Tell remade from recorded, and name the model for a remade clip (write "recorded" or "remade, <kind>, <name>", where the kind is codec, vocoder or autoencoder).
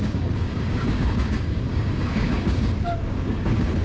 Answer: remade, codec, DAC